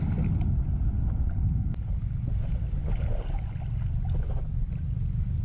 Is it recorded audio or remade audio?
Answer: recorded